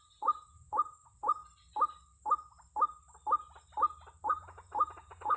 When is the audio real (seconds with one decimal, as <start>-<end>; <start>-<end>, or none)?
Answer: 1.4-4.2